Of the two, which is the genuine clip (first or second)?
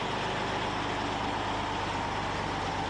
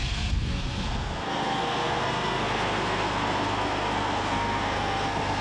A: first